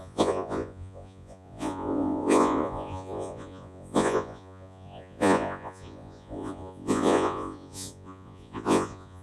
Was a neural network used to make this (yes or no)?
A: yes